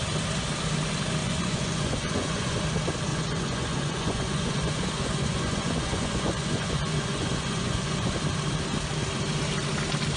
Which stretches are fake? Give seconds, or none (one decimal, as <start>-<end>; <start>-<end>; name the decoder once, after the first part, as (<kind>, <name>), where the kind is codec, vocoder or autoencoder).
1.2-2.6 (vocoder, Vocos); 3.1-8.2